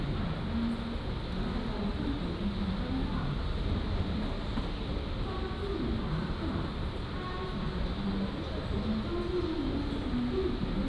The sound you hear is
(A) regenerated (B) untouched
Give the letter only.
B